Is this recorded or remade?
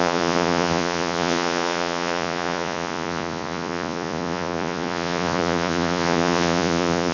remade